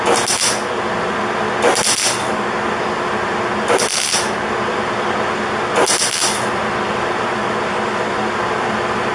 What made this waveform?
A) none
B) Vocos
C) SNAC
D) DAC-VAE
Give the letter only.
A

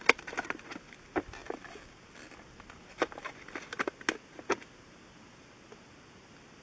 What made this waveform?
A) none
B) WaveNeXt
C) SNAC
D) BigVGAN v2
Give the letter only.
A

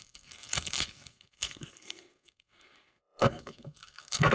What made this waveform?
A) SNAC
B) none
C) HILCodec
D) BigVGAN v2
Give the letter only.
A